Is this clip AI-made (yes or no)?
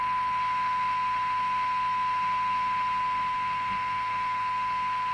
yes